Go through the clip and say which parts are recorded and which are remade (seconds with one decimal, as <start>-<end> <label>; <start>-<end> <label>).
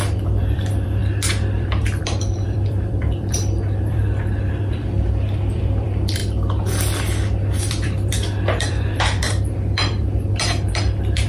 0.0-6.2 remade; 6.2-7.6 recorded; 7.6-11.3 remade